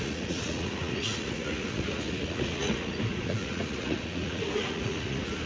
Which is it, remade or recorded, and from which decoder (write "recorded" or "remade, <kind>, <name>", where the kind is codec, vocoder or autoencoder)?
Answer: remade, vocoder, Vocos